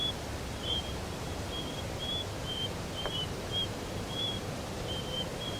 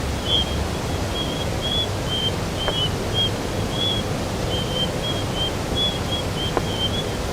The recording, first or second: second